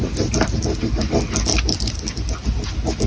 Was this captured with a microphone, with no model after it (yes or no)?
yes